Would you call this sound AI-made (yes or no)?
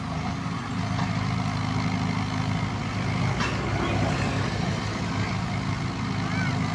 no